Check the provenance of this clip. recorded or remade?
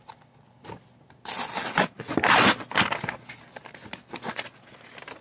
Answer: recorded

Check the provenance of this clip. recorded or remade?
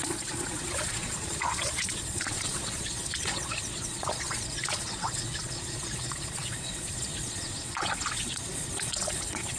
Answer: remade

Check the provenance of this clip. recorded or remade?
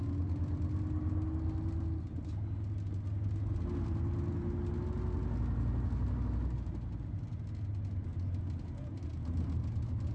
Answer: recorded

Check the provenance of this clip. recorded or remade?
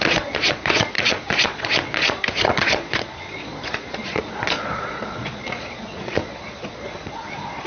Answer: remade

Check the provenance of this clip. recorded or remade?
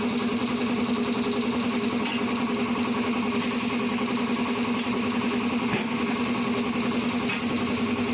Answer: recorded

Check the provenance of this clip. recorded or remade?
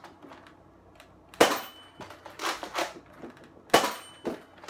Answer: recorded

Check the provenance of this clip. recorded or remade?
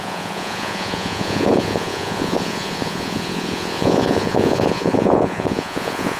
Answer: remade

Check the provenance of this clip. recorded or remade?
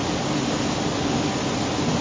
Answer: recorded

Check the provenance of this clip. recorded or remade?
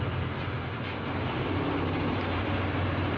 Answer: recorded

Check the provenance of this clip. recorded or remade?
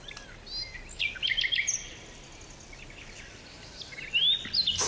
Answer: recorded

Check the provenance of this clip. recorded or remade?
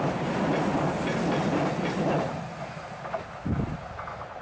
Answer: recorded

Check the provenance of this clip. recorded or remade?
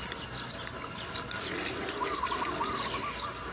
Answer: recorded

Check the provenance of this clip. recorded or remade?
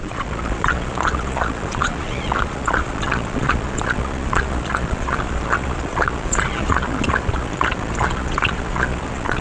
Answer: remade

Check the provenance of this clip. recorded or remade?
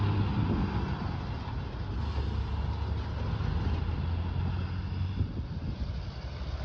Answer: recorded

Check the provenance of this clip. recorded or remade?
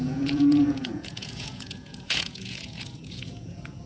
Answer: remade